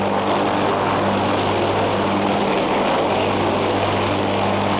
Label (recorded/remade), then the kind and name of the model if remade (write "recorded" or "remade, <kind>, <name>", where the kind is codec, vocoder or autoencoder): recorded